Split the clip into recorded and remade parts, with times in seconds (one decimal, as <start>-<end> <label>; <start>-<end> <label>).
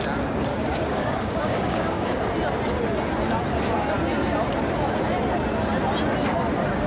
0.0-0.5 recorded; 0.5-2.2 remade; 2.2-6.9 recorded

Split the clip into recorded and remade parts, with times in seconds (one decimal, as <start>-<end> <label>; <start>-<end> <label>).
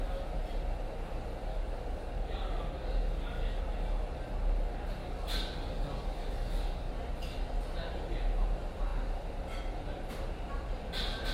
0.0-1.5 recorded; 1.5-3.6 remade; 3.6-5.0 recorded; 5.0-6.9 remade; 6.9-11.3 recorded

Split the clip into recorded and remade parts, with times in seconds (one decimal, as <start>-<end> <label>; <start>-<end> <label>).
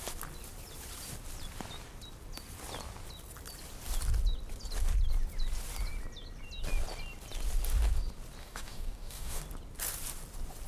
0.0-8.4 recorded; 8.4-9.4 remade; 9.4-10.7 recorded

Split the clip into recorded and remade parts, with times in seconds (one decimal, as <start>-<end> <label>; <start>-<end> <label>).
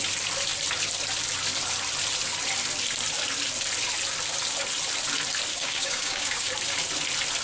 0.0-5.5 recorded; 5.5-6.5 remade; 6.5-7.4 recorded